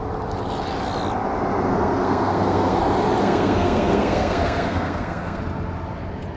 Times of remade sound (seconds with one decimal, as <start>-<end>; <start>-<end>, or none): 1.7-2.8; 3.2-5.4